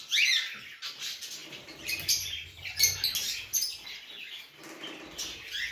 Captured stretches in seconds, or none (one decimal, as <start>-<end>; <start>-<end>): 0.0-5.7